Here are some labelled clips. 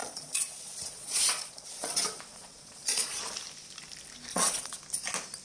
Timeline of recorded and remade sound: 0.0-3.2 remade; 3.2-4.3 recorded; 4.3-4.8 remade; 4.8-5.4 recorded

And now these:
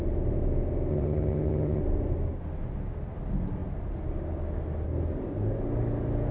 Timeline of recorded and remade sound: 0.0-0.9 recorded; 0.9-1.8 remade; 1.8-6.3 recorded

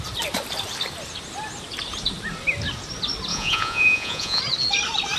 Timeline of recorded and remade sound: 0.0-3.3 recorded; 3.3-4.4 remade; 4.4-5.2 recorded